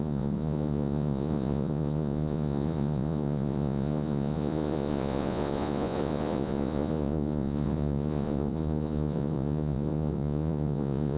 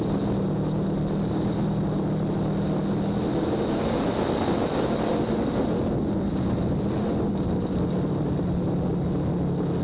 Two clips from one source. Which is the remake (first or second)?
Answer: first